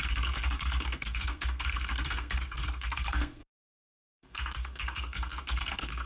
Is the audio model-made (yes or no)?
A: yes